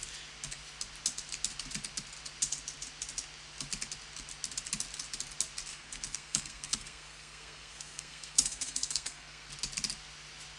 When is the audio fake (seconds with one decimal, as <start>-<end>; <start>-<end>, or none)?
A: 5.7-9.5